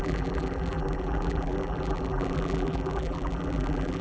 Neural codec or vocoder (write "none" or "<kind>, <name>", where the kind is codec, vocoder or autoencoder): vocoder, BigVGAN v2